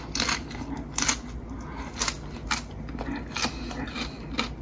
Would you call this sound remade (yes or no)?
no